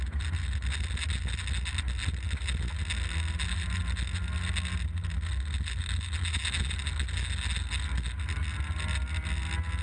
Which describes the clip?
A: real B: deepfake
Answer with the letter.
A